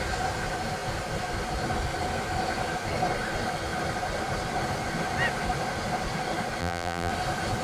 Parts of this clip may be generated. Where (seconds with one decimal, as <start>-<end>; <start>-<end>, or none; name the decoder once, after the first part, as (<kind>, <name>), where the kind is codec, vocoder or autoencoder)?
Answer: 6.6-7.1 (vocoder, BigVGAN v2)